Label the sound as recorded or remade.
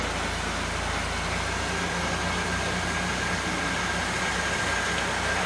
recorded